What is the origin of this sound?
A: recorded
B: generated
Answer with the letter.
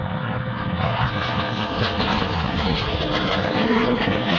B